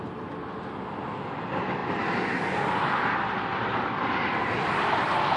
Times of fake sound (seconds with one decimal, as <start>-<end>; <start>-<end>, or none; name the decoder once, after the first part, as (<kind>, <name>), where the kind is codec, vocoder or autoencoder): none